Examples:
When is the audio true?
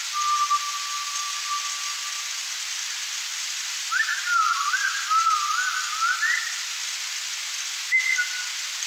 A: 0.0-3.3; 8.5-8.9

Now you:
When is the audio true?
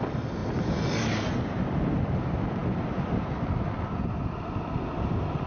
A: 0.0-5.5